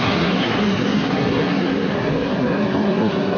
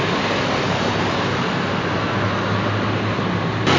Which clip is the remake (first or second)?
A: first